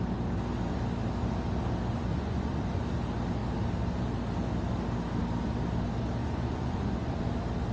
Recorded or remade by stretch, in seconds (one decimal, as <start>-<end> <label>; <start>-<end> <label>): 0.0-1.9 recorded; 1.9-2.8 remade; 2.8-6.2 recorded; 6.2-7.2 remade; 7.2-7.7 recorded